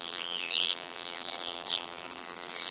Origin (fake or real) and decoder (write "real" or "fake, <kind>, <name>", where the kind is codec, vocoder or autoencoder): fake, vocoder, BigVGAN v2